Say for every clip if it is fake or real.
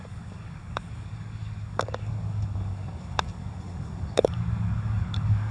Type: fake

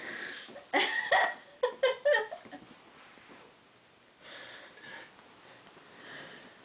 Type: real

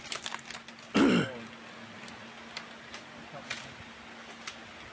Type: real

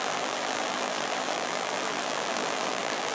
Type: fake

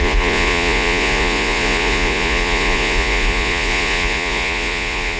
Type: fake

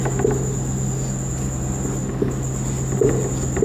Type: real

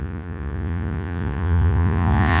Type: fake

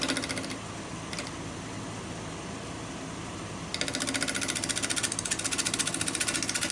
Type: real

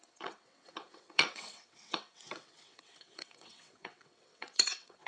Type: fake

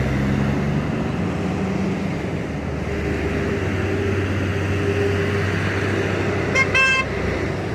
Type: real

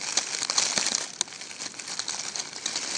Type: real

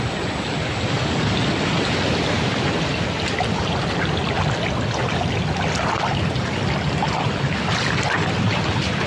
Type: real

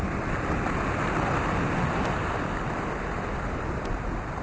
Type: real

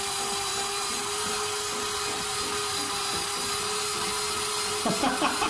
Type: real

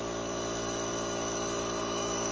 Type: fake